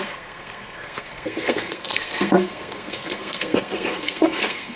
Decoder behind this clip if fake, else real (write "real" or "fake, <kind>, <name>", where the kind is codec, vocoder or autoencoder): fake, codec, SNAC